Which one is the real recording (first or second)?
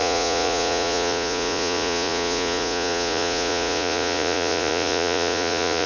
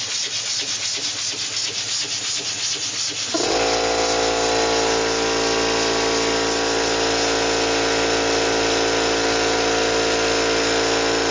second